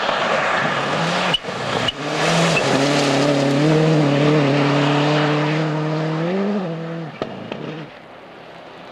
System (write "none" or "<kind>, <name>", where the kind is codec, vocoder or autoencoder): none